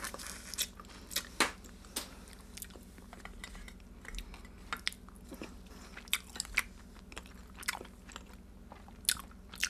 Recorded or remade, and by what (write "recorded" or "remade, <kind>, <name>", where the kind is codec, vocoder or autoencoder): recorded